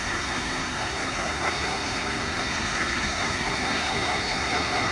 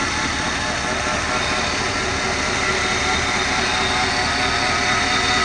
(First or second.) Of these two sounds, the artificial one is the first